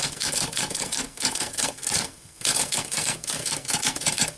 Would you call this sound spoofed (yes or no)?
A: yes